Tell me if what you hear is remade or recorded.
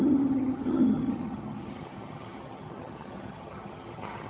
remade